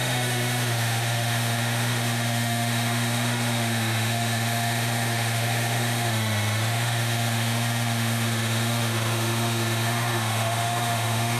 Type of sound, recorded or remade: remade